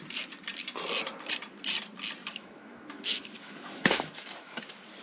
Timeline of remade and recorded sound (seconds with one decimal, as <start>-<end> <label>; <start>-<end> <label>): 0.0-2.2 recorded; 2.2-4.6 remade; 4.6-5.0 recorded

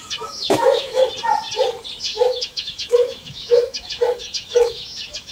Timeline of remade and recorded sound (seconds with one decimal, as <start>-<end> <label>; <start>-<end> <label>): 0.0-1.0 remade; 1.0-2.0 recorded; 2.0-5.3 remade

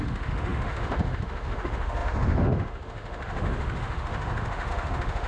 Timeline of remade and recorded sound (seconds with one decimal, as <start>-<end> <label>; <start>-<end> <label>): 0.0-5.3 remade

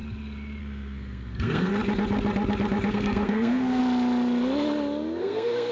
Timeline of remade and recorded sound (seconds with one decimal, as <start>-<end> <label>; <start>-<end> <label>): 0.0-0.6 recorded; 0.6-1.7 remade; 1.7-2.9 recorded; 2.9-3.8 remade; 3.8-5.2 recorded; 5.2-5.7 remade

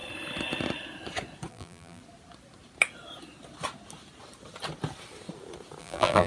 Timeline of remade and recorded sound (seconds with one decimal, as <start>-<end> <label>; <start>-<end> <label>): 0.0-1.5 recorded; 1.5-2.0 remade; 2.0-5.8 recorded; 5.8-6.3 remade

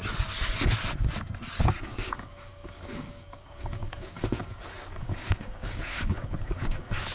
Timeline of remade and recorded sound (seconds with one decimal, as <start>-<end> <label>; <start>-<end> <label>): 0.0-1.8 recorded; 1.8-7.1 remade